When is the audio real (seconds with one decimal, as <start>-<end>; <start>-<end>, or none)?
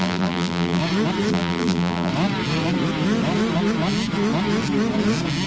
0.8-1.3; 2.1-5.5